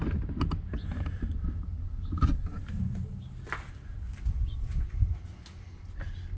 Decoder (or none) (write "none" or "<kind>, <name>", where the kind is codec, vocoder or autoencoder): none